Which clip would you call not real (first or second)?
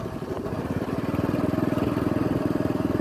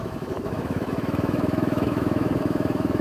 second